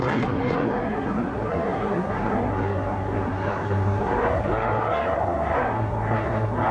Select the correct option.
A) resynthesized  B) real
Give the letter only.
A